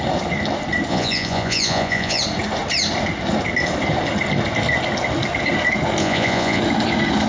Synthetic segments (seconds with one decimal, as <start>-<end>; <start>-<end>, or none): 0.9-2.2; 6.0-6.6